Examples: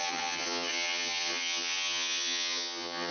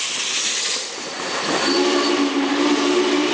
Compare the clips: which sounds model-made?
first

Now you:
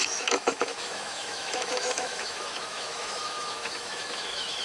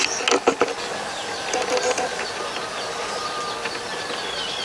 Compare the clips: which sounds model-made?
first